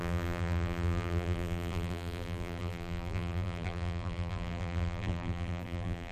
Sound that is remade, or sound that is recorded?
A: remade